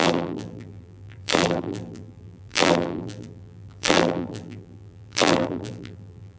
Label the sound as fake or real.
fake